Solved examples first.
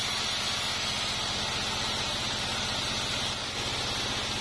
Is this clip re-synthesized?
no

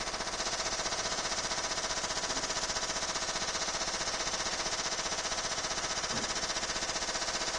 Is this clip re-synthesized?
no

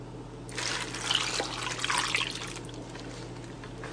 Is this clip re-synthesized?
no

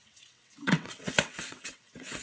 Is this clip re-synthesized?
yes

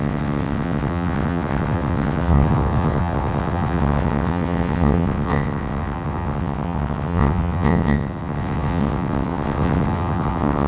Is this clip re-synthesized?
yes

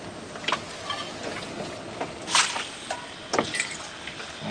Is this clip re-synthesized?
no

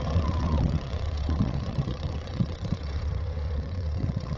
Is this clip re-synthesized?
yes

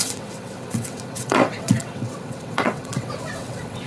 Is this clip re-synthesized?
yes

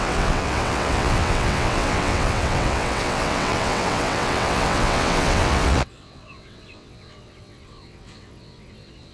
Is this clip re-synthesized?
yes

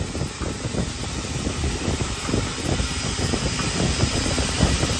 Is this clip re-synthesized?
no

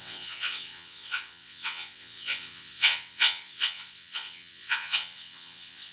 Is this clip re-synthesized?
yes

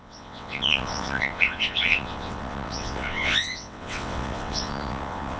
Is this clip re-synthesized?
yes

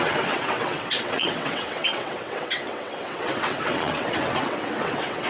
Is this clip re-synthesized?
yes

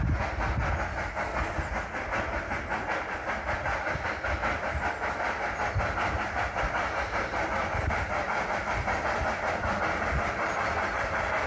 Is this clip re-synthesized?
no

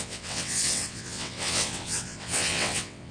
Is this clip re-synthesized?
yes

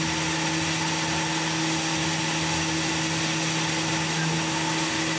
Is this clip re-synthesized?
no